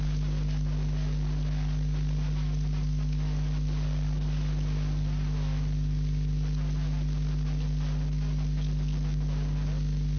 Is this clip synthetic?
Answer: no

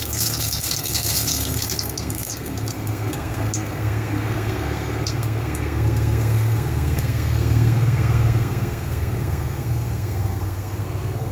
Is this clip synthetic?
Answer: yes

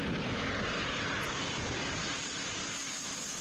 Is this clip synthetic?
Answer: no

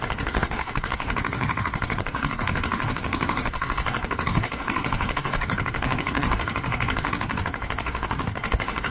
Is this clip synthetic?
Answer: yes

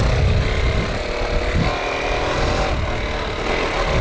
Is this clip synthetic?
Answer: no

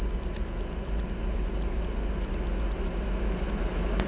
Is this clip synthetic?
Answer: no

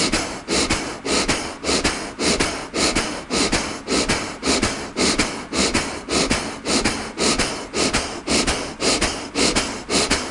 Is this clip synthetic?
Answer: no